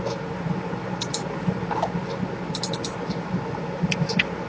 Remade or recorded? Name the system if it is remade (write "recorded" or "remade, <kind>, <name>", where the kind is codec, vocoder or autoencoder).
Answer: recorded